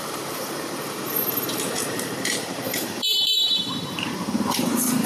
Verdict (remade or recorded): remade